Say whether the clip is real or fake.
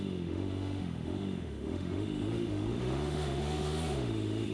fake